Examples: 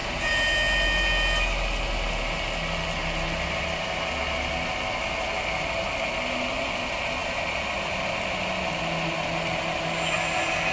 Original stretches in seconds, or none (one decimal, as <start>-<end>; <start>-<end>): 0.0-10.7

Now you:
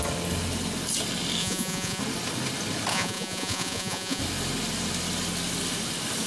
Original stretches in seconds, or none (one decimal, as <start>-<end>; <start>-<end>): 0.0-1.4; 2.0-2.9; 4.2-6.3

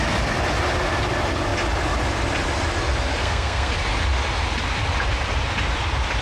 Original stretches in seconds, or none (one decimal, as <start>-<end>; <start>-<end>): 0.0-3.2; 3.7-6.2

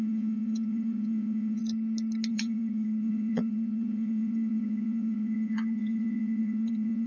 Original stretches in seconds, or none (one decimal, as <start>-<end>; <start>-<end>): 1.6-2.3